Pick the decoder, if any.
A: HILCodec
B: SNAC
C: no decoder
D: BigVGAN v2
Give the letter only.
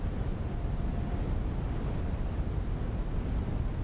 C